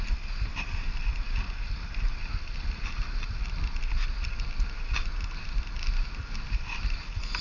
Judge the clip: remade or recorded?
recorded